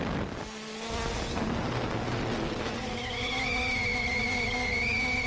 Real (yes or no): yes